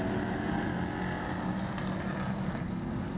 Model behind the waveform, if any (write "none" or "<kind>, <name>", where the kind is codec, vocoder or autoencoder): none